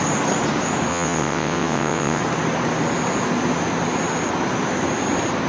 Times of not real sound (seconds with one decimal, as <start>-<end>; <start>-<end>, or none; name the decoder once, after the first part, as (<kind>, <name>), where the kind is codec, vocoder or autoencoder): 0.9-2.2 (vocoder, WaveNeXt)